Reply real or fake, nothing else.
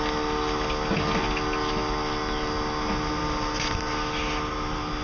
real